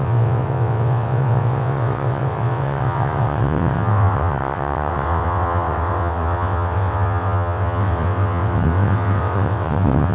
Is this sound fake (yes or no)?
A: yes